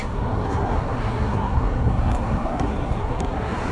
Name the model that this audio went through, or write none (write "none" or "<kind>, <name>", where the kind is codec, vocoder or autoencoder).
codec, SNAC